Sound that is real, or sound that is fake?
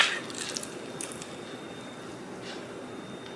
real